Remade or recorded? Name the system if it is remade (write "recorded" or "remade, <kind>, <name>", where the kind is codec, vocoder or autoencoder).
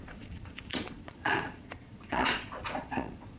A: remade, vocoder, Vocos